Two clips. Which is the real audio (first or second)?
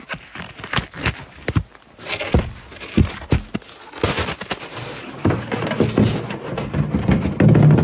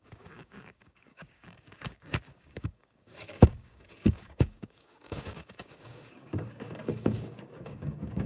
first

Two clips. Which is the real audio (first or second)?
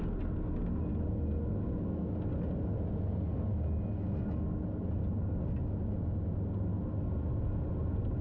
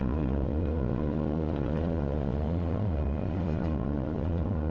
first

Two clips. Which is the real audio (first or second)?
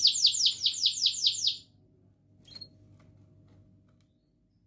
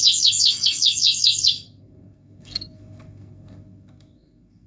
first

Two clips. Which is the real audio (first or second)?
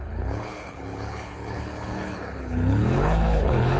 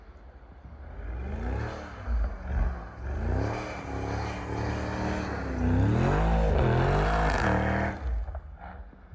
second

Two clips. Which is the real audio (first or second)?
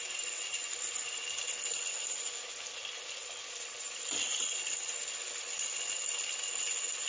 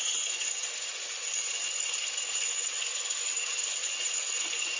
first